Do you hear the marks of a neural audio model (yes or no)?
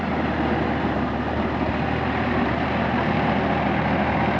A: no